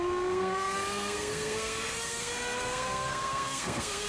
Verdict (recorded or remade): remade